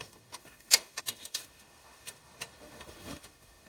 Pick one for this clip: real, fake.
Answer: fake